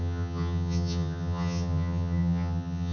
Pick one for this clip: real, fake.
fake